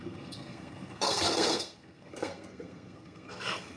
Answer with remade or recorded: remade